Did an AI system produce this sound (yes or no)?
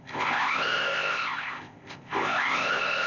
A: yes